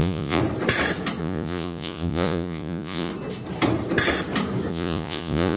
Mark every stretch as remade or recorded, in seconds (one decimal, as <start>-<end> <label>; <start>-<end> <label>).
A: 0.0-0.4 remade; 0.4-1.2 recorded; 1.2-3.1 remade; 3.1-4.7 recorded; 4.7-5.6 remade